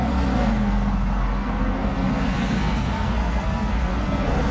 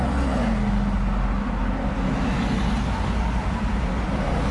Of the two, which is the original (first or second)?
second